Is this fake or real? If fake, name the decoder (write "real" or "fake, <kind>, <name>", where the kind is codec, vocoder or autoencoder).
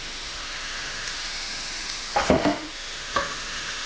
fake, autoencoder, DAC-VAE